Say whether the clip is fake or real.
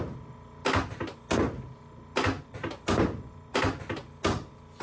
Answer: real